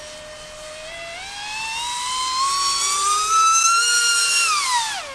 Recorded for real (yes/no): yes